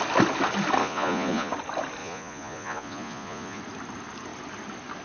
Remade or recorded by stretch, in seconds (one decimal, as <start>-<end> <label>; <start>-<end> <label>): 0.0-0.8 recorded; 0.8-1.5 remade; 1.5-2.0 recorded; 2.0-3.6 remade; 3.6-5.0 recorded